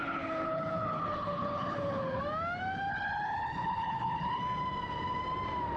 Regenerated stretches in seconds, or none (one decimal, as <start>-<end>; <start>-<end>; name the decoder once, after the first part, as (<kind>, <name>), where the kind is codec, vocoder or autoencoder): 0.0-2.2 (codec, HILCodec); 2.9-4.4